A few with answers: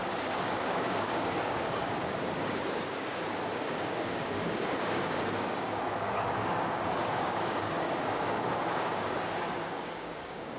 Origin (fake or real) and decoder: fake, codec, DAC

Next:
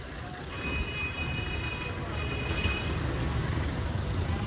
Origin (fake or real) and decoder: real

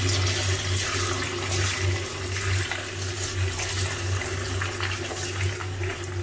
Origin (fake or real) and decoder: real